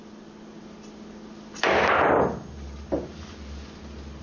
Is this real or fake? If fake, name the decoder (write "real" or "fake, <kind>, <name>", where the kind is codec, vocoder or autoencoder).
real